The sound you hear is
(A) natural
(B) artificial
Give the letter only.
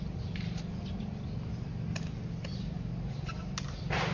A